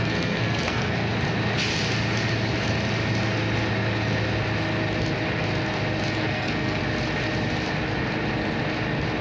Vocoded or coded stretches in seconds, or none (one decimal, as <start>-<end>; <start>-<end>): 0.0-1.1; 6.1-6.8